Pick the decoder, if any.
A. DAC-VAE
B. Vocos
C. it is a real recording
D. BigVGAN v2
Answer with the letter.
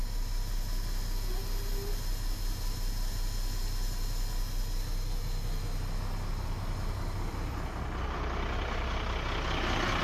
C